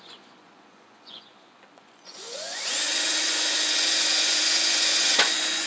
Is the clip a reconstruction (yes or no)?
yes